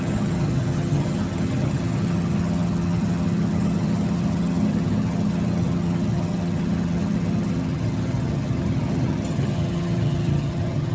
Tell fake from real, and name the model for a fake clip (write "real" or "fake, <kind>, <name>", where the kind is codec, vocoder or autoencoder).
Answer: fake, vocoder, HiFi-GAN